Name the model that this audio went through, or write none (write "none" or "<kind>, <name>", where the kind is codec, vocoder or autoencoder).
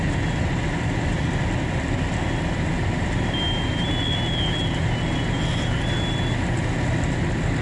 none